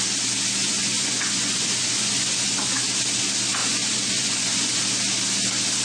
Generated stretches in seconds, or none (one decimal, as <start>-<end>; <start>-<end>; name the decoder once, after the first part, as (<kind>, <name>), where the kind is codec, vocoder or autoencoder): 0.6-2.7 (vocoder, Vocos); 3.6-4.8